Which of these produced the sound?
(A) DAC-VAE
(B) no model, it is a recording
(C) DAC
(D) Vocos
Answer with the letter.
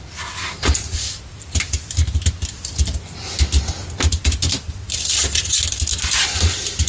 B